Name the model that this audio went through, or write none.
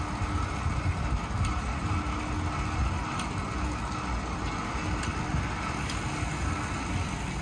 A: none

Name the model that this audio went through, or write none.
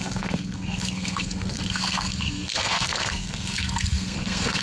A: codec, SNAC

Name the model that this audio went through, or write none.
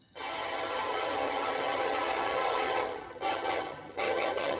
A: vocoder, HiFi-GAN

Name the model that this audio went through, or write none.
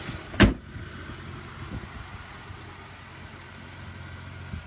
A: none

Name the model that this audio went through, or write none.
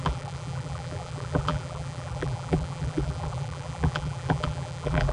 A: vocoder, BigVGAN v2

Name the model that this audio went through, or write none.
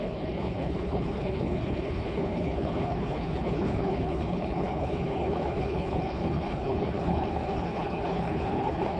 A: codec, HILCodec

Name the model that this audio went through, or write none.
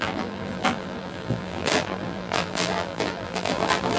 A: vocoder, BigVGAN v2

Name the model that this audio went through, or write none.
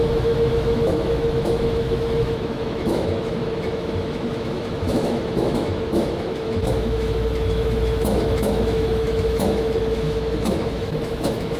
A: autoencoder, DAC-VAE